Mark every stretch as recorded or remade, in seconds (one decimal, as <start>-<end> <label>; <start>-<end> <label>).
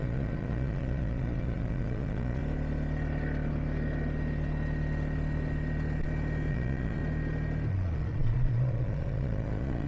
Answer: 0.0-2.4 remade; 2.4-6.5 recorded; 6.5-7.0 remade; 7.0-7.7 recorded; 7.7-9.9 remade